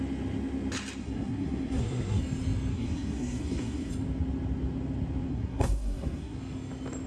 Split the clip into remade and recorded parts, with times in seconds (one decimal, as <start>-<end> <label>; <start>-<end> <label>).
0.0-1.0 recorded; 1.0-2.2 remade; 2.2-2.7 recorded; 2.7-3.9 remade; 3.9-5.3 recorded; 5.3-6.4 remade; 6.4-7.1 recorded